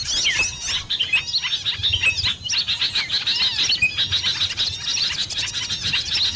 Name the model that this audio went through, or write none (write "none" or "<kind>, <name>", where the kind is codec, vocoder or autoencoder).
none